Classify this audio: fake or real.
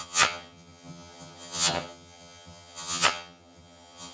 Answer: fake